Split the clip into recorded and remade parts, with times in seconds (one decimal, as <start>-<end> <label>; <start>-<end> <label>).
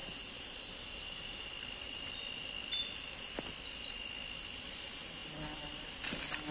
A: 0.0-6.5 recorded